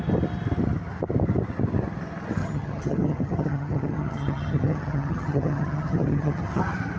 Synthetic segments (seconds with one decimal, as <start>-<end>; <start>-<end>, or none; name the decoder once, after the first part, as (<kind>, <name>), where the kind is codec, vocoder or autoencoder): 2.4-6.6 (vocoder, HiFi-GAN)